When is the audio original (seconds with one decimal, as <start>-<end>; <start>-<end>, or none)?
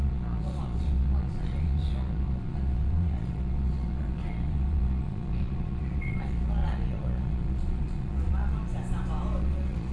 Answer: 8.7-9.4